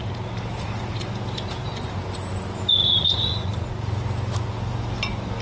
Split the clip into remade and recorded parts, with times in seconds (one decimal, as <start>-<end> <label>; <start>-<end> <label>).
0.0-0.5 recorded; 0.5-1.1 remade; 1.1-2.8 recorded; 2.8-3.9 remade; 3.9-5.4 recorded